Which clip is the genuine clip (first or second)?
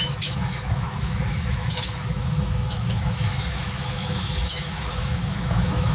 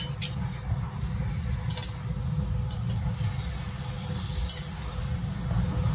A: second